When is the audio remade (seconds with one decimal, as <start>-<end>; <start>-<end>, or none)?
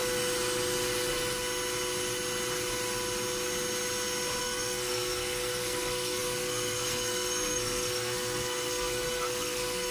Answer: 4.4-9.9